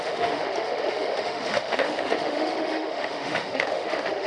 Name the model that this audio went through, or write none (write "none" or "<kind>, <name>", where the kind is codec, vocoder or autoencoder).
autoencoder, DAC-VAE